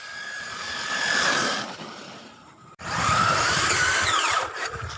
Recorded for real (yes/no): no